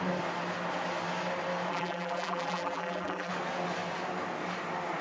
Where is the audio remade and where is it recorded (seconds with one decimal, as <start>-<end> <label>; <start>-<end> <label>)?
0.0-1.7 recorded; 1.7-3.3 remade; 3.3-5.0 recorded